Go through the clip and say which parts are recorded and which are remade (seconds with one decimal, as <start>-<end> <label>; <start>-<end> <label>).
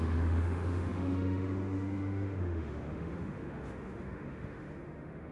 0.0-5.3 remade